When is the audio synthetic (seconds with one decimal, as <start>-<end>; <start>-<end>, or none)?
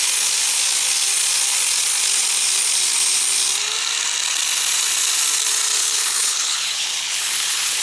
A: 5.8-7.8